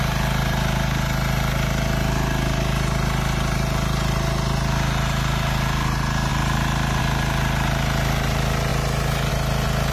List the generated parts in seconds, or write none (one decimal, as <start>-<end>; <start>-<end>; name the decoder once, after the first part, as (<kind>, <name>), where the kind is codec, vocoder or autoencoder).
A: 6.3-7.0 (vocoder, BigVGAN v2); 8.7-9.3